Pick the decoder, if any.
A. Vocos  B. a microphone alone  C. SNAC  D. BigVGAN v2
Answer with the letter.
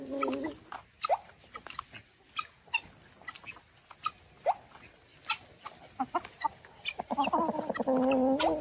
B